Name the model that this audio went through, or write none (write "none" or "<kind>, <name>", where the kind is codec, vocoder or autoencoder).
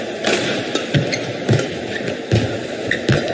none